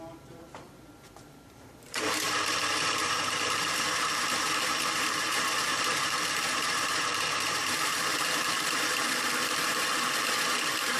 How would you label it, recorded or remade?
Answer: remade